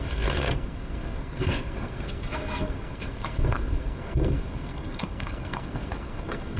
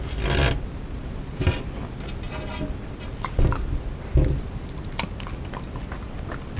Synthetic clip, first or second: first